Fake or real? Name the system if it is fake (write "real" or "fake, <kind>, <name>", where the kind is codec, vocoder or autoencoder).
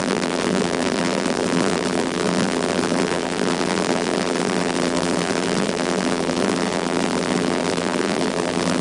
fake, vocoder, BigVGAN v2